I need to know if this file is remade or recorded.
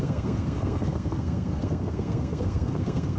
remade